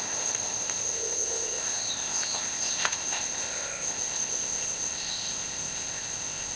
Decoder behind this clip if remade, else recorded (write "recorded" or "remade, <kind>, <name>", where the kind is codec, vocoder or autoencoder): remade, codec, ZipCodec